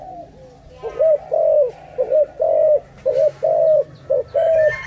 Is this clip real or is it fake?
real